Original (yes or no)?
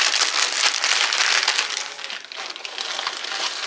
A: yes